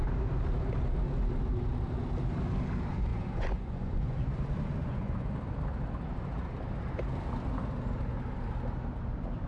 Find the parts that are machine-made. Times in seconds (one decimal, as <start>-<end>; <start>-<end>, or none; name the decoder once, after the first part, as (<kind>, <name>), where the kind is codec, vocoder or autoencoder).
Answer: 3.1-4.3 (vocoder, Vocos); 4.8-5.3